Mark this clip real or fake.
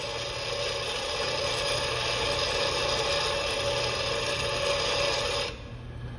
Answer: real